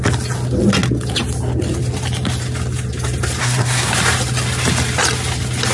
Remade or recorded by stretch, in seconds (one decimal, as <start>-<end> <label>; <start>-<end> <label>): 0.0-3.4 recorded; 3.4-3.9 remade; 3.9-5.7 recorded